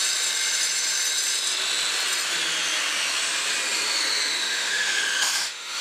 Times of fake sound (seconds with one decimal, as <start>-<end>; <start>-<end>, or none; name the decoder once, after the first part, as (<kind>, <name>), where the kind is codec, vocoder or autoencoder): 4.3-5.8 (autoencoder, DAC-VAE)